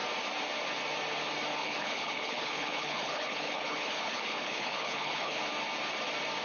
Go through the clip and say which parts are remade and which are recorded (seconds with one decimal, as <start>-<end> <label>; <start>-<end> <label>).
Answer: 0.0-1.6 recorded; 1.6-5.4 remade; 5.4-6.4 recorded